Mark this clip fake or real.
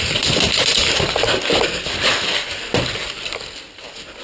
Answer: real